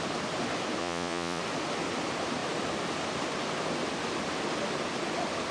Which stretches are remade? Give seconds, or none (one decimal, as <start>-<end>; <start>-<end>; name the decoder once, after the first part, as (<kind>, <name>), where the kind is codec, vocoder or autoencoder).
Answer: 0.8-1.4 (vocoder, Vocos)

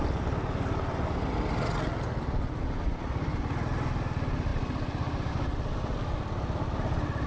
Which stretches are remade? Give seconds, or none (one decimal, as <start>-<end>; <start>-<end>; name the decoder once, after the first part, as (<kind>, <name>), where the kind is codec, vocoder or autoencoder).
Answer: none

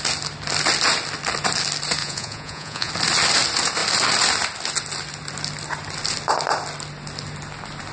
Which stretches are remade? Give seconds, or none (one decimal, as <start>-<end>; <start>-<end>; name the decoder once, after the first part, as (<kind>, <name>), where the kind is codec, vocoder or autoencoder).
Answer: 2.0-2.9 (vocoder, Vocos)